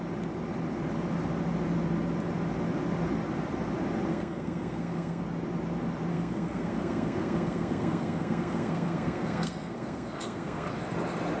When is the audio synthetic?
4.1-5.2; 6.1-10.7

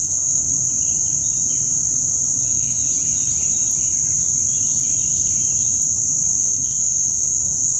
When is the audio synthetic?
0.0-0.5; 2.4-2.8; 6.4-7.8

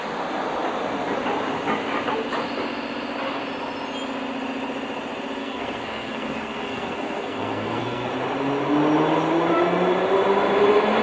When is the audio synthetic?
5.4-8.1

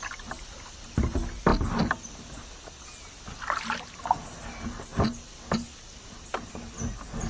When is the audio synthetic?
none

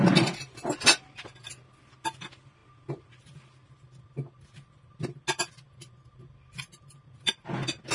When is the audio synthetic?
none